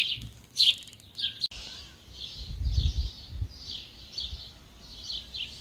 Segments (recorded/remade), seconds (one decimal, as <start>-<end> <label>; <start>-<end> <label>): 0.0-5.6 recorded